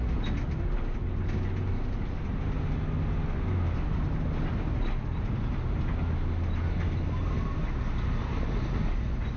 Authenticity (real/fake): real